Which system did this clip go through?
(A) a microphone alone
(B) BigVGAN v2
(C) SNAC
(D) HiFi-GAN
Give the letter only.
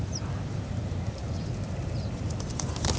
B